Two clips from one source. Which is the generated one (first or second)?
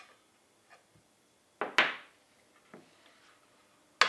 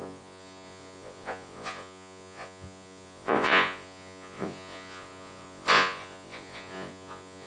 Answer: second